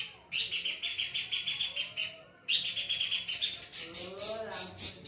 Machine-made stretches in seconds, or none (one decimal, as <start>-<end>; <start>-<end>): none